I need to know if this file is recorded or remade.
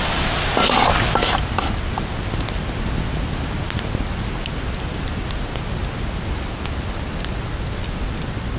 recorded